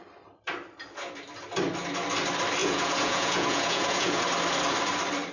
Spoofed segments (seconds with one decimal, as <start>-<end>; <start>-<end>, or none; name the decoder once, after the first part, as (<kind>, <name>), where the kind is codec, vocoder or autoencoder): 2.6-4.2 (vocoder, Vocos)